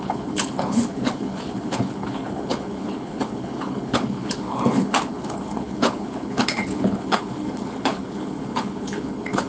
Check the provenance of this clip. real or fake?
fake